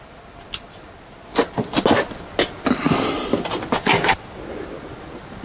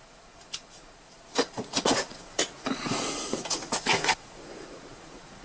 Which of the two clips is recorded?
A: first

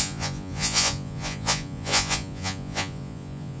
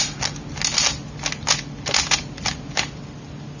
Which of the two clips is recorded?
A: second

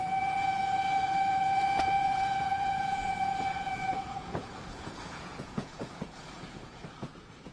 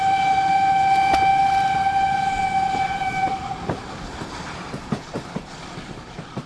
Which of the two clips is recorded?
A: second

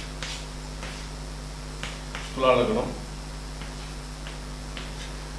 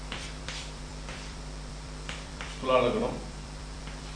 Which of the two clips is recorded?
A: first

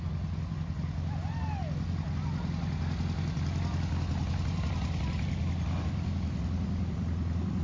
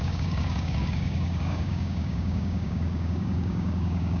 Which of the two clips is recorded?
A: first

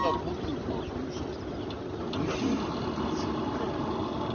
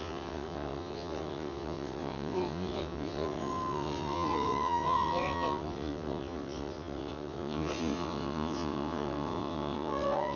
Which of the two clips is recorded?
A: first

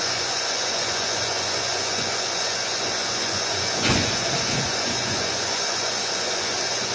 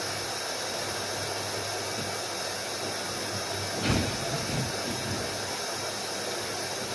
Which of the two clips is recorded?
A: second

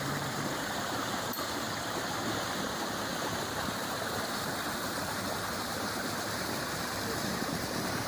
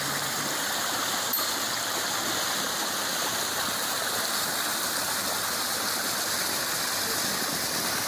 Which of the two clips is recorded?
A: second